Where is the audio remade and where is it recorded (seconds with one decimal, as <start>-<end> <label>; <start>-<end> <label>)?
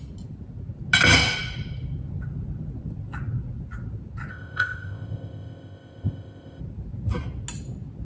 0.0-4.3 recorded; 4.3-6.6 remade; 6.6-8.0 recorded